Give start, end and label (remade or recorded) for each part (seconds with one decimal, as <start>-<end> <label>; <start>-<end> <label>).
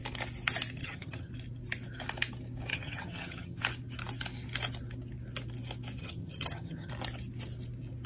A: 0.0-0.8 recorded; 0.8-1.3 remade; 1.3-2.7 recorded; 2.7-3.6 remade; 3.6-6.0 recorded; 6.0-6.9 remade; 6.9-8.1 recorded